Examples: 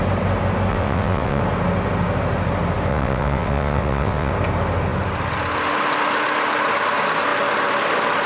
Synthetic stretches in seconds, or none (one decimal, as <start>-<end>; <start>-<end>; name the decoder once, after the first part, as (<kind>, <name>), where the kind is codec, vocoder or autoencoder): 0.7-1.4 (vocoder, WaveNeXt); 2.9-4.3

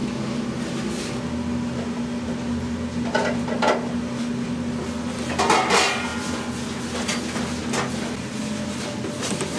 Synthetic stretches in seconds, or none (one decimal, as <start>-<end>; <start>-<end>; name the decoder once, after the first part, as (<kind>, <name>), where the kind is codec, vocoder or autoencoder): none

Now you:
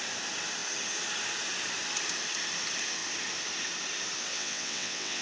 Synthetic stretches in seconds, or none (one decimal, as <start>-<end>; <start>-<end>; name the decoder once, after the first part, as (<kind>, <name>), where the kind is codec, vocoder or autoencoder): 4.3-5.2 (vocoder, WaveNeXt)